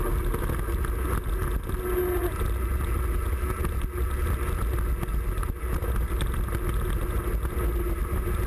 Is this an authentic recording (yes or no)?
yes